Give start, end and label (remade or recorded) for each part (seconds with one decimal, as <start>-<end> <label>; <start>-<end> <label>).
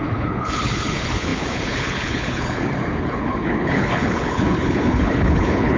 0.0-5.8 remade